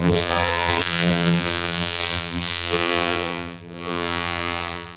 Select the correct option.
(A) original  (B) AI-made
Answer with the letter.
B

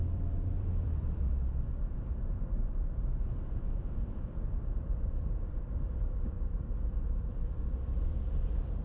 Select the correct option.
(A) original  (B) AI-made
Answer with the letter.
B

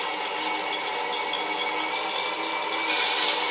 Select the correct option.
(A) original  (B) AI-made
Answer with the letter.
A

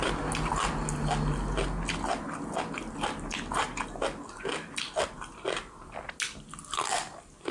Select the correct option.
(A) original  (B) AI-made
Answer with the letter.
A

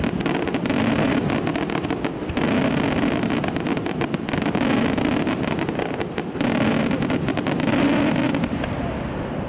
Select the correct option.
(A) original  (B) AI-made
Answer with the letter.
A